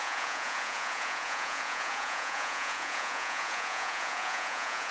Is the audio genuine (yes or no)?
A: no